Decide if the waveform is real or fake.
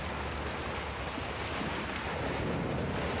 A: real